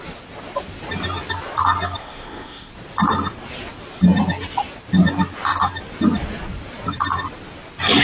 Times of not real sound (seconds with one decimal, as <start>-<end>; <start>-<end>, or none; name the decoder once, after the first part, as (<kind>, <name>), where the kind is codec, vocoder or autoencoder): 2.0-2.7 (codec, ZipCodec)